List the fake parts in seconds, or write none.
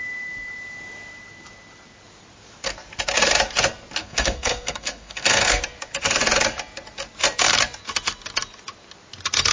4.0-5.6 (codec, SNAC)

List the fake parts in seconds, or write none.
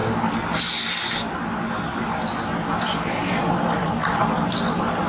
none